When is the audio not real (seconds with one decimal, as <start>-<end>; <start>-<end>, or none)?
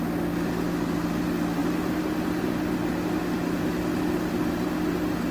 none